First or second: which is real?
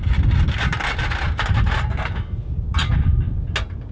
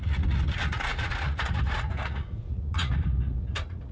first